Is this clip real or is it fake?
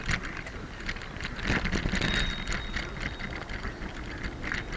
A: real